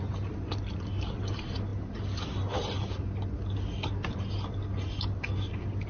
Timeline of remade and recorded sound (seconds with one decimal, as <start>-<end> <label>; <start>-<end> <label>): 0.0-5.9 recorded